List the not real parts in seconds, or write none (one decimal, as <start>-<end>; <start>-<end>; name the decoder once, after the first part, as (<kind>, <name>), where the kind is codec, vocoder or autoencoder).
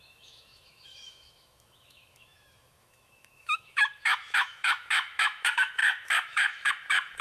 0.0-7.2 (autoencoder, DAC-VAE)